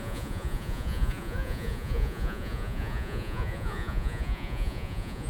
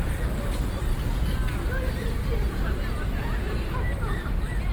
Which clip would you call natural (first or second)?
second